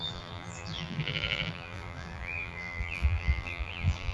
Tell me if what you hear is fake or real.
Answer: fake